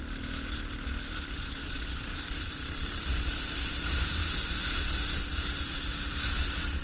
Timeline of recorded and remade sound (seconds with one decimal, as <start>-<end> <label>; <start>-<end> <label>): 0.0-1.6 recorded; 1.6-3.7 remade; 3.7-6.8 recorded